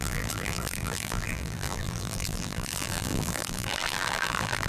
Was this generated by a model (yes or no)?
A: yes